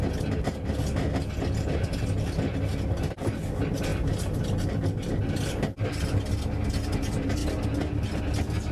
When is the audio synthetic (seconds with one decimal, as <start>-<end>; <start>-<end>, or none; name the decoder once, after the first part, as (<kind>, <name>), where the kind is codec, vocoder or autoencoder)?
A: none